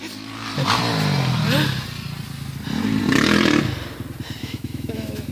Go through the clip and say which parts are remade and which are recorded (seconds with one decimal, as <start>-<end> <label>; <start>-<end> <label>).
0.0-4.4 recorded; 4.4-5.3 remade